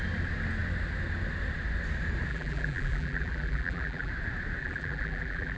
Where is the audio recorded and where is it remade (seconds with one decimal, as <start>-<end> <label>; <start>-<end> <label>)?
0.0-2.3 recorded; 2.3-4.1 remade; 4.1-4.6 recorded; 4.6-5.6 remade